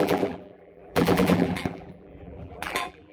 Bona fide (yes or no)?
no